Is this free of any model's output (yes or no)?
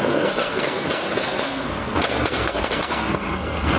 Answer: no